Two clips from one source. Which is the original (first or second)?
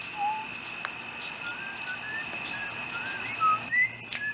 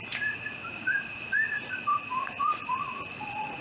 first